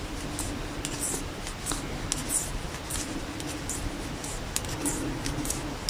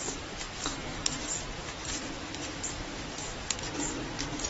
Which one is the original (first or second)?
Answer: first